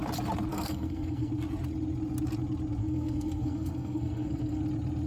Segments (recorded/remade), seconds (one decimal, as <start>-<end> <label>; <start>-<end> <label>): 0.0-0.5 recorded; 0.5-1.3 remade; 1.3-2.8 recorded; 2.8-4.6 remade; 4.6-5.1 recorded

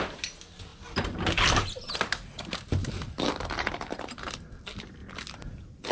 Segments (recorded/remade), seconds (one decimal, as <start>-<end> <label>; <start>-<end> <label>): 0.0-5.9 recorded

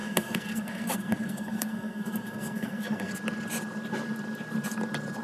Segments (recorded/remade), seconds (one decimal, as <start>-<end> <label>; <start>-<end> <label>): 0.0-3.1 remade; 3.1-5.2 recorded

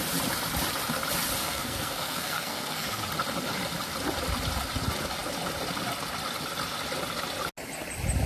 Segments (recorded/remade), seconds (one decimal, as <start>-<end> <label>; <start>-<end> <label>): 0.0-1.4 recorded; 1.4-3.0 remade; 3.0-8.3 recorded